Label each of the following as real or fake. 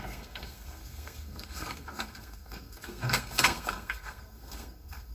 fake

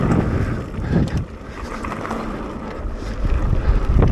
real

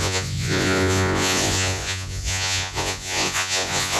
fake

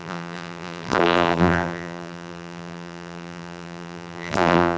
fake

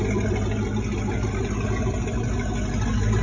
real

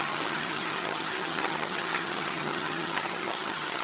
fake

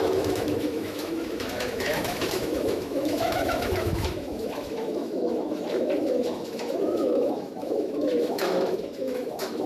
fake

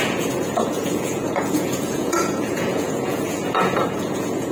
fake